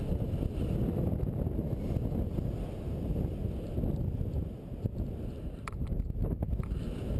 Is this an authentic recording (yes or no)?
yes